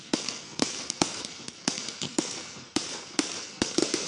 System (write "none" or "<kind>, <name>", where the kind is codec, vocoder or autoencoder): codec, SNAC